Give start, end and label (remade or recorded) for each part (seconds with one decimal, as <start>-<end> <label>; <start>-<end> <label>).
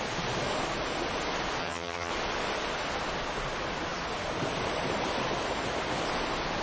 0.0-1.6 recorded; 1.6-2.1 remade; 2.1-6.6 recorded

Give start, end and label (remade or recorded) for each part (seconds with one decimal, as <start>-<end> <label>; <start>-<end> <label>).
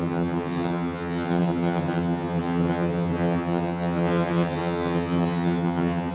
0.0-6.1 remade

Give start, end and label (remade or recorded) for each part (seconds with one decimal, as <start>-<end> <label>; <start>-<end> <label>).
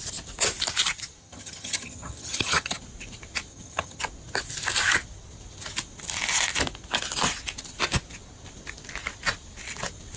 0.0-1.2 recorded; 1.2-2.8 remade; 2.8-3.5 recorded; 3.5-4.0 remade; 4.0-10.2 recorded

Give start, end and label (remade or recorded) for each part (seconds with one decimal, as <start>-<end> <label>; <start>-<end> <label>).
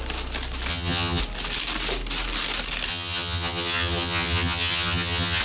0.0-0.7 recorded; 0.7-1.2 remade; 1.2-2.9 recorded; 2.9-5.4 remade